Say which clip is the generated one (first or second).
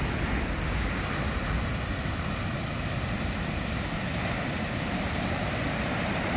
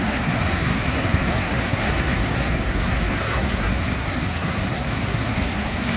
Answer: second